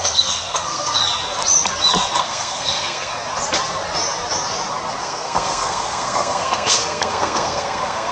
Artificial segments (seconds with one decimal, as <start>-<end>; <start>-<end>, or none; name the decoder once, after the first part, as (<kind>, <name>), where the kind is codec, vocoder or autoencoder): 0.0-1.0 (codec, SNAC); 2.2-3.1; 5.0-8.1